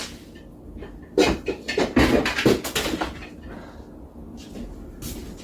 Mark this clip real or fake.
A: real